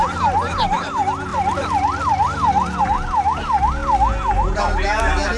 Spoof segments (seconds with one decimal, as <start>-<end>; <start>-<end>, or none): 1.3-2.8

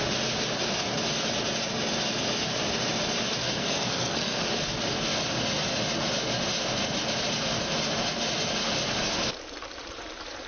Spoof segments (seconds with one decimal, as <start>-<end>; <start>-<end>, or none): 3.4-4.4